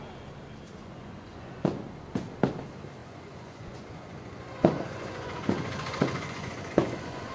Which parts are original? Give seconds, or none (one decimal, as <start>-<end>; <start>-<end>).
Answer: 0.0-0.8; 1.8-3.0